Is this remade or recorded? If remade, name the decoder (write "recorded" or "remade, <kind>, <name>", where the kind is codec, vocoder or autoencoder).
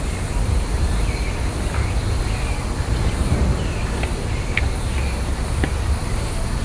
recorded